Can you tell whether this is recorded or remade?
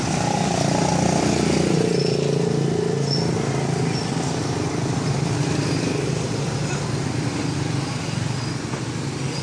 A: recorded